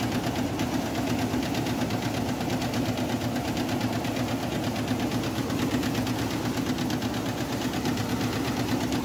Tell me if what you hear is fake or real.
real